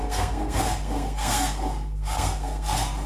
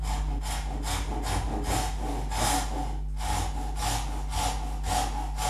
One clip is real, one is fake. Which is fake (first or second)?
first